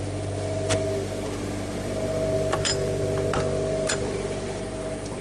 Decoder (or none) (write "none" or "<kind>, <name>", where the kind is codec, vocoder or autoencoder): vocoder, BigVGAN v2